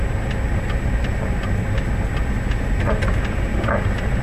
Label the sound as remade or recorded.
recorded